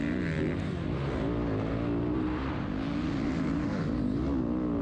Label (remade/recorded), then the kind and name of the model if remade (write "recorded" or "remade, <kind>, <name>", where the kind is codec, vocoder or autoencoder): recorded